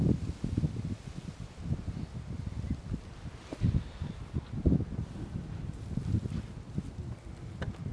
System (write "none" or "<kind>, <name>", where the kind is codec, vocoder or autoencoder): none